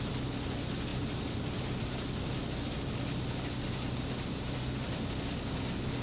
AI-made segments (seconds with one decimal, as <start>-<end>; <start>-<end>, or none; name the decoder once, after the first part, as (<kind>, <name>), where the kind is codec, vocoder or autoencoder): none